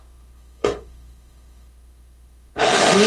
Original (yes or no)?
no